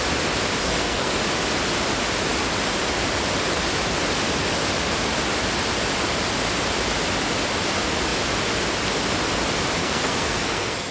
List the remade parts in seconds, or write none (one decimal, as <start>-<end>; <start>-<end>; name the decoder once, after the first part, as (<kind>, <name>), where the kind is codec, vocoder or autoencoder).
0.6-1.2 (codec, SNAC); 9.8-10.9

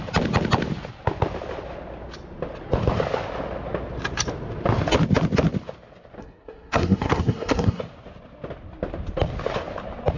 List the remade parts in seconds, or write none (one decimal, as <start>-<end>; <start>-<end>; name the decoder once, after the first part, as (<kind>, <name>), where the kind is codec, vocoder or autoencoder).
6.2-7.8 (codec, SNAC)

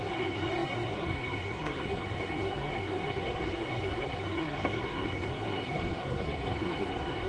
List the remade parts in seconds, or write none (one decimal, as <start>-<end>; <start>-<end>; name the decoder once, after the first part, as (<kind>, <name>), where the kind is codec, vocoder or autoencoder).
0.0-7.3 (codec, SNAC)

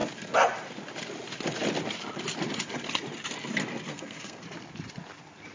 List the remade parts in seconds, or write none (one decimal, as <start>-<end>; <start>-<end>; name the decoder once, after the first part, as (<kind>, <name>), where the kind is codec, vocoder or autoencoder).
3.9-4.4 (codec, SNAC)

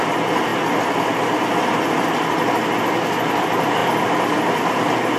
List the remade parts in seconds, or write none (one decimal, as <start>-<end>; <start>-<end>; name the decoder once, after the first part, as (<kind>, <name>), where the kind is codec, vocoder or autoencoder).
none

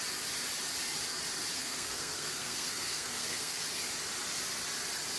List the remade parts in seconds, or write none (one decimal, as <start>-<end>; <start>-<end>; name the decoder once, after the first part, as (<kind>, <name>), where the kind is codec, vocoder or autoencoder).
1.6-3.6 (codec, SNAC)

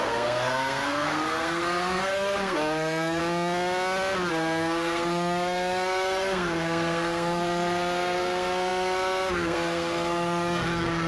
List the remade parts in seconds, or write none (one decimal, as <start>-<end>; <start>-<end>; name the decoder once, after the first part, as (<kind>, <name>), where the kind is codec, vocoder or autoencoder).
0.0-3.2 (codec, SNAC); 4.3-11.1

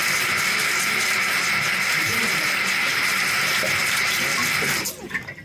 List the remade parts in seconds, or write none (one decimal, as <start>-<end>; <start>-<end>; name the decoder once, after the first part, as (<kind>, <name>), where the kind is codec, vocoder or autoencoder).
none